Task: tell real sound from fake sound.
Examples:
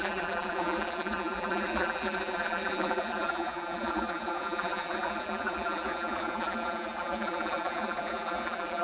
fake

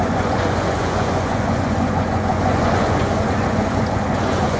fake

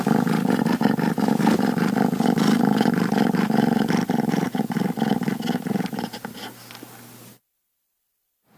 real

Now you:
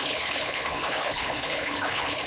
fake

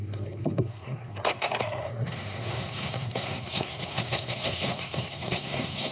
fake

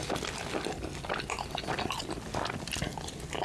real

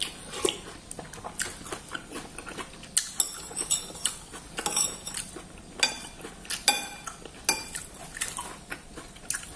real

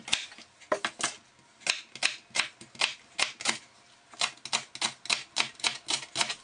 real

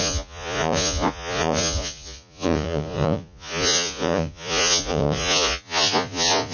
fake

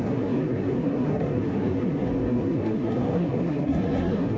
fake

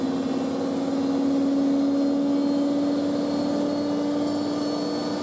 real